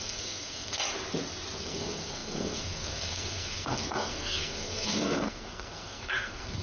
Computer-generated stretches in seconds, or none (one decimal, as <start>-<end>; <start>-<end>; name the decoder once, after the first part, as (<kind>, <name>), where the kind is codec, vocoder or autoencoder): 0.0-0.8 (codec, SNAC); 1.6-6.6